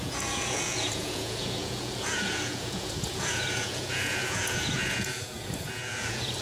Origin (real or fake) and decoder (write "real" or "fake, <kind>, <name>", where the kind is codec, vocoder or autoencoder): fake, vocoder, Vocos